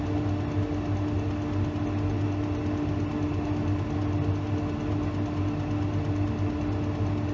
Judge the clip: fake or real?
real